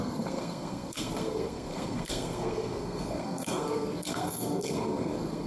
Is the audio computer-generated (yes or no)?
yes